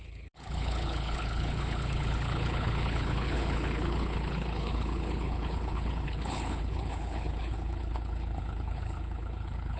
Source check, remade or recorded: remade